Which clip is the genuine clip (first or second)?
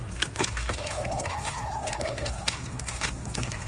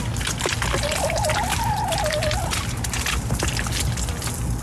second